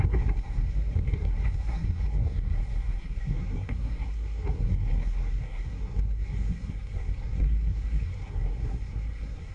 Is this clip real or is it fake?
fake